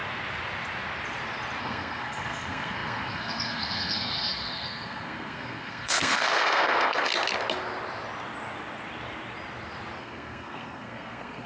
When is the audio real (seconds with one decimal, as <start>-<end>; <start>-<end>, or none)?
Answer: 0.0-1.6; 7.1-10.0